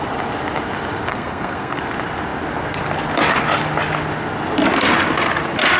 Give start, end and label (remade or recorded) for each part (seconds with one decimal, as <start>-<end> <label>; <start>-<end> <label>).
0.0-1.1 recorded; 1.1-1.8 remade; 1.8-5.8 recorded